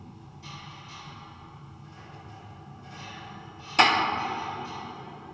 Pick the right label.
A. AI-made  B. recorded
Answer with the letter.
B